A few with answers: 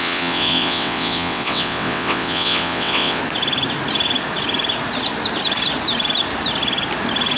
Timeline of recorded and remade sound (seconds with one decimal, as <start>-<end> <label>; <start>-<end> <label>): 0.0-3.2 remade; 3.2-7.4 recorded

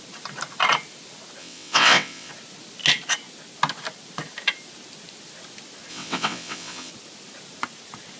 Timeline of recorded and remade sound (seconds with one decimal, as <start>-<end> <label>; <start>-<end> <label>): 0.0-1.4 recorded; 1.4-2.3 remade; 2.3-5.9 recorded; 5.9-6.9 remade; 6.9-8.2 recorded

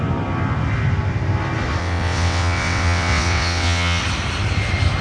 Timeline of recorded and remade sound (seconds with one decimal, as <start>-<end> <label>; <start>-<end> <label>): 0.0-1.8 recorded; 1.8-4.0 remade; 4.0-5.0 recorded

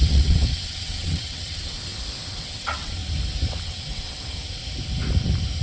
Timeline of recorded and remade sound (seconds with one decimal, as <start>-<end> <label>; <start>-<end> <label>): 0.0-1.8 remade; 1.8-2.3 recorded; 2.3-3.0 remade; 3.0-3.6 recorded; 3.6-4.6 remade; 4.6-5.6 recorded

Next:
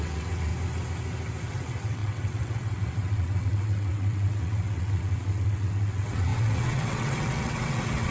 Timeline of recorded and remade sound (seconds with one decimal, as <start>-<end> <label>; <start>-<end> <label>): 0.0-0.5 remade; 0.5-1.5 recorded; 1.5-8.1 remade